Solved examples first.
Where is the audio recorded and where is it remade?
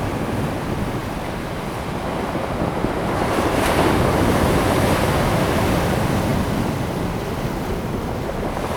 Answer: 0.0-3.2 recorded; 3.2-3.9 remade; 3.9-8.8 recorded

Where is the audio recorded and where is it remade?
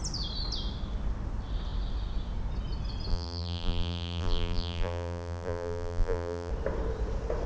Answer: 0.0-3.1 recorded; 3.1-6.5 remade; 6.5-7.5 recorded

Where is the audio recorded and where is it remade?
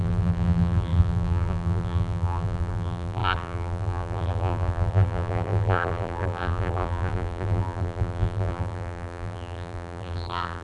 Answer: 0.0-10.6 remade